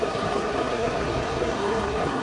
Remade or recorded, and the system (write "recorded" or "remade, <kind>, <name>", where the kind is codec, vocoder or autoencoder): remade, codec, SNAC